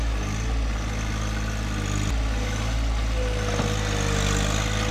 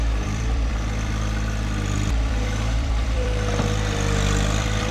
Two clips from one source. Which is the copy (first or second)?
second